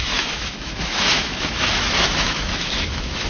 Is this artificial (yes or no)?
yes